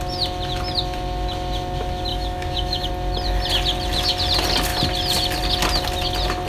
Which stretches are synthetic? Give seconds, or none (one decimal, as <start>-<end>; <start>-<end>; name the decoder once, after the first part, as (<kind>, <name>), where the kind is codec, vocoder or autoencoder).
2.1-2.9 (autoencoder, DAC-VAE)